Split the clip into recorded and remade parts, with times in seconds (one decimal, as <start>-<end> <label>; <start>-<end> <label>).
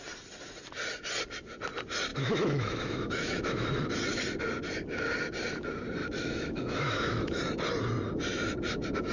0.0-2.1 recorded; 2.1-3.9 remade; 3.9-6.0 recorded; 6.0-7.4 remade; 7.4-9.1 recorded